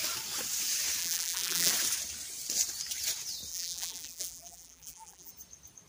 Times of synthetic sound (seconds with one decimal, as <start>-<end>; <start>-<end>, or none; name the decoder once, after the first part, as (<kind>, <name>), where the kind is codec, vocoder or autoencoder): 1.0-1.7 (vocoder, BigVGAN v2); 3.5-5.3